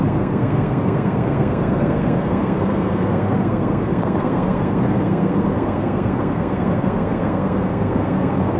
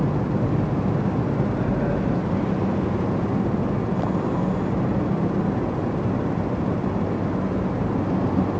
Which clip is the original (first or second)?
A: second